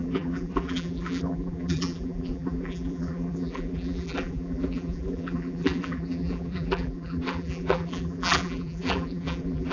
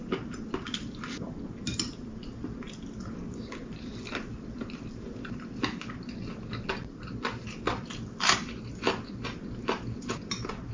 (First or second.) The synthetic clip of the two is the first